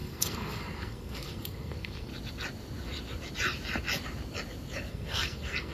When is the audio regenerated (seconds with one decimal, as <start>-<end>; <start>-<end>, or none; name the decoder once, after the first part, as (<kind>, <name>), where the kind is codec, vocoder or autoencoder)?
0.0-2.1 (codec, SNAC); 4.9-5.7